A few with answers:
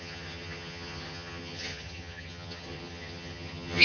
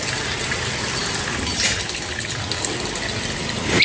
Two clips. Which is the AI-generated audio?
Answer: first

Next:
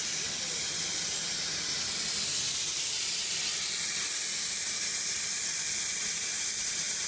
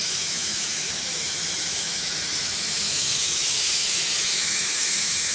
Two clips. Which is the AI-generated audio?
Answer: second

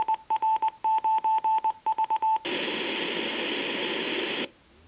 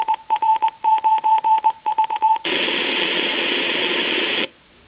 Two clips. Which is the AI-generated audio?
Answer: second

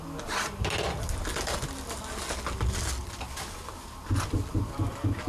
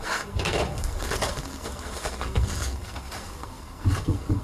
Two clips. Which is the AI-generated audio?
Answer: second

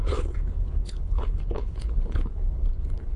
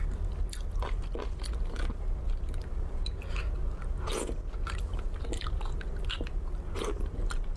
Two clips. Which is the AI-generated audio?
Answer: first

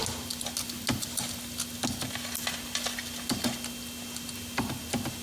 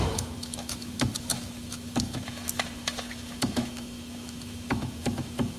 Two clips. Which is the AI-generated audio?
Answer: second